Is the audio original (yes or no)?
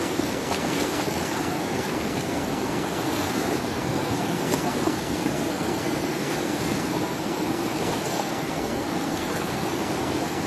no